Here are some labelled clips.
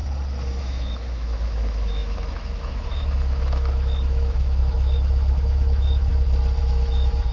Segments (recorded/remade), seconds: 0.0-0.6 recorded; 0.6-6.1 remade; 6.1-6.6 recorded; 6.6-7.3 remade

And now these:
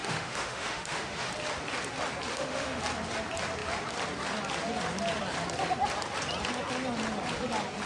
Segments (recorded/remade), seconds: 0.0-1.3 remade; 1.3-2.3 recorded; 2.3-2.8 remade; 2.8-7.9 recorded

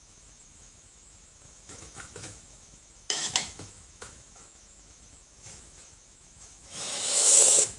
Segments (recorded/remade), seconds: 0.0-7.8 remade

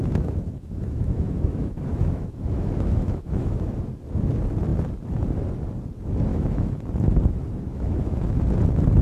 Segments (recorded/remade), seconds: 0.0-3.7 remade; 3.7-6.3 recorded; 6.3-6.8 remade; 6.8-7.7 recorded; 7.7-8.4 remade; 8.4-9.0 recorded

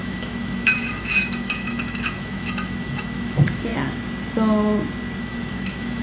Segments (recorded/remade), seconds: 0.0-3.7 remade; 3.7-5.2 recorded; 5.2-6.0 remade

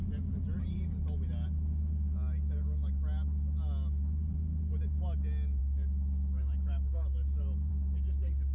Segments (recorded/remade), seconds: 0.0-5.6 recorded; 5.6-7.7 remade; 7.7-8.5 recorded

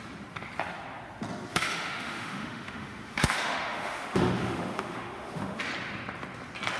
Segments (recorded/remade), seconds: 0.0-1.5 recorded; 1.5-5.6 remade; 5.6-6.8 recorded